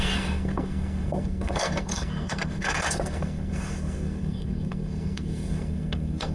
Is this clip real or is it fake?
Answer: fake